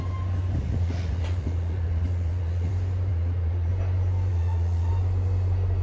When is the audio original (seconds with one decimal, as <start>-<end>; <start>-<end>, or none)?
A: 0.0-0.6; 2.7-3.1; 3.7-4.3; 4.9-5.8